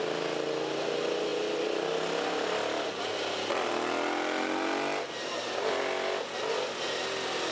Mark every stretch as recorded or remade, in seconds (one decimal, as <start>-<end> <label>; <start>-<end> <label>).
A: 0.0-7.5 recorded